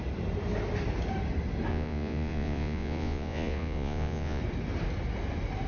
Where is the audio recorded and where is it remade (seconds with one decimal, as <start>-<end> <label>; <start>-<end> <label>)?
0.0-1.7 recorded; 1.7-4.4 remade; 4.4-5.7 recorded